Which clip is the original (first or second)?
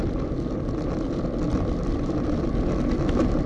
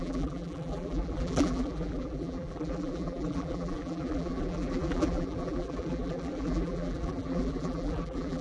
first